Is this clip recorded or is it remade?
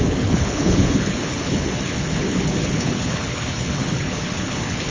remade